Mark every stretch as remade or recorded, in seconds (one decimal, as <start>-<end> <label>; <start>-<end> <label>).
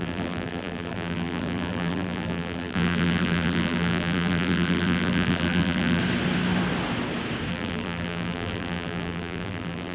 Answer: 0.0-6.0 remade; 6.0-7.5 recorded; 7.5-9.9 remade